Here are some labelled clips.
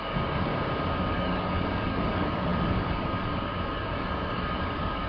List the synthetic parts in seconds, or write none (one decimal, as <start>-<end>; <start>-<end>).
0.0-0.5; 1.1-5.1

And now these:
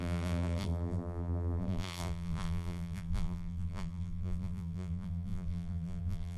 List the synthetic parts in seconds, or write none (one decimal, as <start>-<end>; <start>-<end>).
0.0-6.4

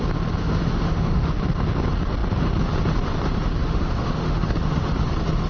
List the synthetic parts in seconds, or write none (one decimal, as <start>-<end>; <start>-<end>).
0.4-1.4; 3.6-4.9